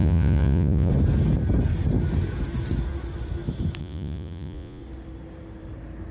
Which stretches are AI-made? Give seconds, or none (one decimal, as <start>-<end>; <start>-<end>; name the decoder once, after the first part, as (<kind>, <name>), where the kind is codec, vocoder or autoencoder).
0.0-0.9 (vocoder, Vocos); 3.8-4.8